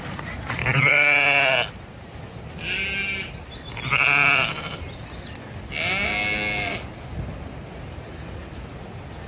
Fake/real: real